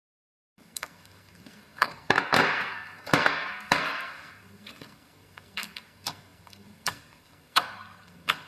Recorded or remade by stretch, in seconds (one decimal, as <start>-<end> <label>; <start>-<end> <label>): 0.0-8.5 remade